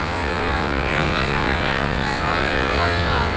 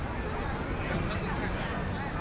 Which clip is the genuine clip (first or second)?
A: second